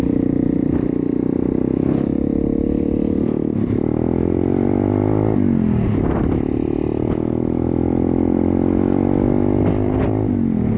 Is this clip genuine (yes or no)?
yes